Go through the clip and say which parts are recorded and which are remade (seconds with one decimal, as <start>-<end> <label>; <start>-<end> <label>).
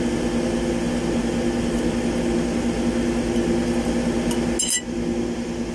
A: 0.0-5.7 recorded